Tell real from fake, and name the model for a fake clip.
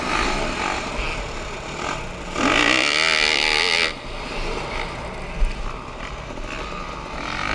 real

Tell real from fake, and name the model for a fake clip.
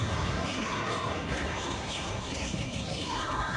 fake, codec, SNAC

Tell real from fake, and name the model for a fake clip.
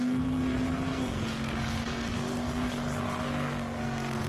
fake, codec, SNAC